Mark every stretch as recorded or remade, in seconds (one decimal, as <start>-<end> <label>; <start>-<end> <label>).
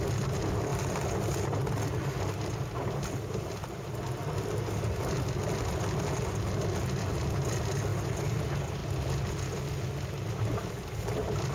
0.0-7.9 recorded; 7.9-8.4 remade; 8.4-11.5 recorded